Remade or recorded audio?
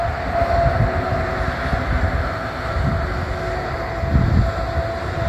recorded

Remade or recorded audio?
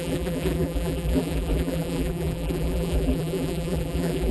remade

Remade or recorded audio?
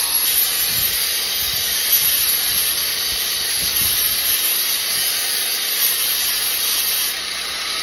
recorded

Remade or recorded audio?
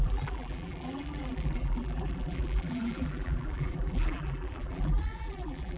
remade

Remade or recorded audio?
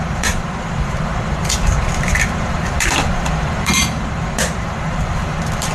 remade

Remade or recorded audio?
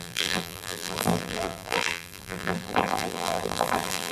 remade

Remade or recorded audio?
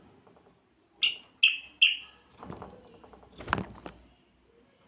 recorded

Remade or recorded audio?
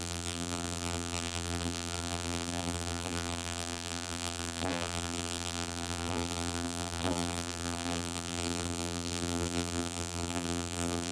remade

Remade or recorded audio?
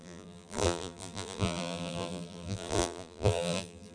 remade